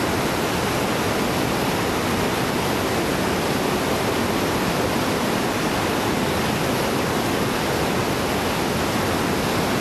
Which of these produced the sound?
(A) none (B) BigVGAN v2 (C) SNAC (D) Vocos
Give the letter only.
A